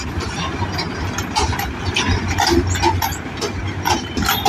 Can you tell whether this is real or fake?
real